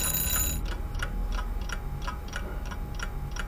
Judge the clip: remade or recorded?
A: recorded